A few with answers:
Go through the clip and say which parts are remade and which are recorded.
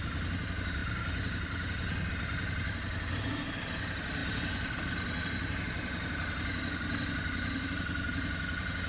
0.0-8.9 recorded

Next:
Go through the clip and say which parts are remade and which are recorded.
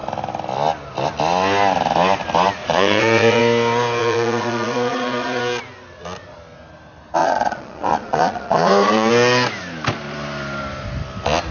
0.0-2.6 recorded; 2.6-3.4 remade; 3.4-4.0 recorded; 4.0-5.4 remade; 5.4-7.2 recorded; 7.2-9.1 remade; 9.1-11.5 recorded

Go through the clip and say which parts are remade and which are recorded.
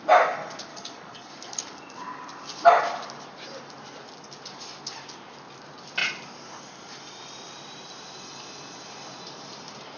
0.0-0.7 recorded; 0.7-1.3 remade; 1.3-10.0 recorded